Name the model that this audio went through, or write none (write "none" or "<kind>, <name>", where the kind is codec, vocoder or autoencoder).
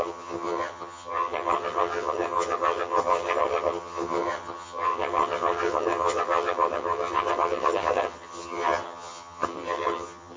vocoder, HiFi-GAN